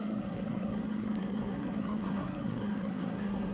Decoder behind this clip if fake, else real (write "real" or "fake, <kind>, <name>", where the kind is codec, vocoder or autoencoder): fake, codec, SNAC